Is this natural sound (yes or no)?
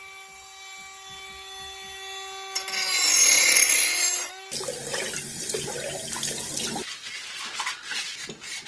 yes